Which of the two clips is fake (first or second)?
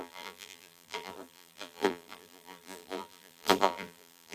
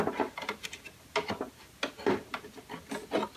first